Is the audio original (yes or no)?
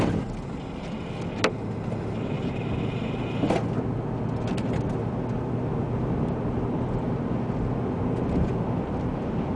yes